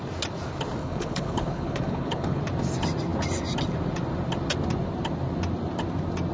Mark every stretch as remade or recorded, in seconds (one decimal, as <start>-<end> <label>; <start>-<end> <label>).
0.0-0.8 recorded; 0.8-2.4 remade; 2.4-6.3 recorded